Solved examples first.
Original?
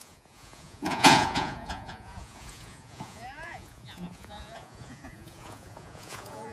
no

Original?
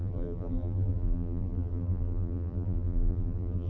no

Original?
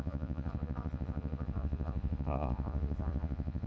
no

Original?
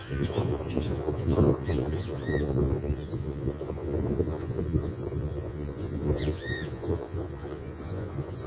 no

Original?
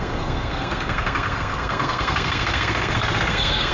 no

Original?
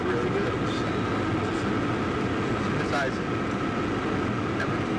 yes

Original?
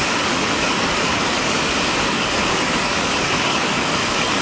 no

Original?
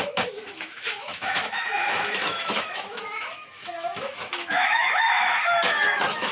no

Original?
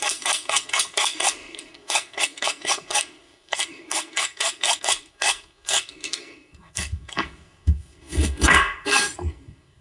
no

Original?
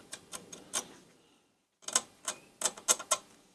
yes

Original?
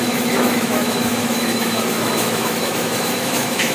no